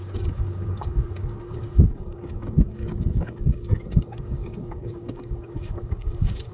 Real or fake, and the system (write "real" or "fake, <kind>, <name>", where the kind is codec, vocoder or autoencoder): fake, codec, DAC